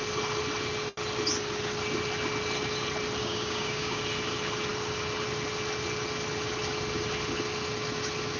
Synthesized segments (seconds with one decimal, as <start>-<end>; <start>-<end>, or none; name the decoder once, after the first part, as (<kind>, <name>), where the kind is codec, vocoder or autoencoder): 3.2-4.0 (codec, DAC)